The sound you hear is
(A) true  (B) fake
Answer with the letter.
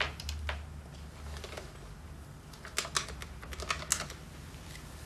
A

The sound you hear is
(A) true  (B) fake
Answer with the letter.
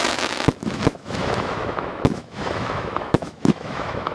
B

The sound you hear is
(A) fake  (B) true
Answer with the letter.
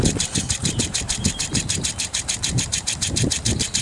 A